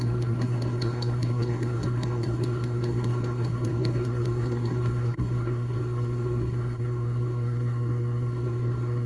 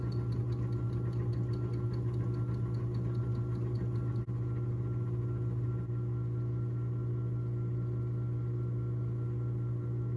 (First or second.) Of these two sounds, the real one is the second